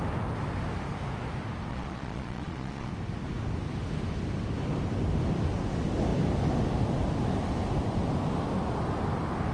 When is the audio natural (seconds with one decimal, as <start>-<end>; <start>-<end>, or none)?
0.0-1.7; 2.9-9.5